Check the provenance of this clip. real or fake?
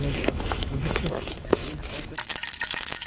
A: fake